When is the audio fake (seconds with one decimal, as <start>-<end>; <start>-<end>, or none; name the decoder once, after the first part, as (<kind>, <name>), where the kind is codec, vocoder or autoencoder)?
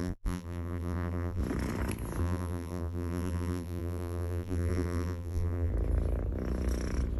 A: 0.0-1.4 (vocoder, BigVGAN v2); 2.2-5.7